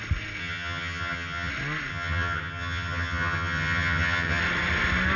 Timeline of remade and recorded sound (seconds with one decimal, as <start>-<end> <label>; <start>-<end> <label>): 0.0-0.4 recorded; 0.4-1.5 remade; 1.5-1.9 recorded; 1.9-4.4 remade; 4.4-5.2 recorded